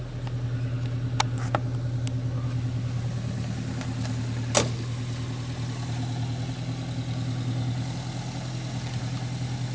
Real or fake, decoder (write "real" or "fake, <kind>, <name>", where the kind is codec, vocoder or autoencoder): real